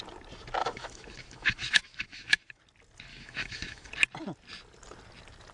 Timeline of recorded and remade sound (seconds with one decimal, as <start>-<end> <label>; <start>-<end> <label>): 0.0-0.6 recorded; 0.6-2.6 remade; 2.6-3.1 recorded; 3.1-3.9 remade; 3.9-5.5 recorded

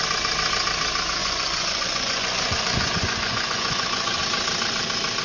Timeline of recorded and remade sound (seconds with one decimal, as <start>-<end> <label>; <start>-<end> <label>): 0.0-1.2 recorded; 1.2-4.2 remade; 4.2-5.2 recorded

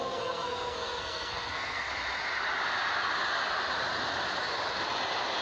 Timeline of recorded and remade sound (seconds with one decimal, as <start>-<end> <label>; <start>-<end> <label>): 0.0-1.9 remade; 1.9-5.4 recorded

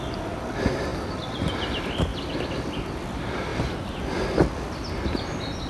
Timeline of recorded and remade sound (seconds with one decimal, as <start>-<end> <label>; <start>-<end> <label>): 0.0-5.7 recorded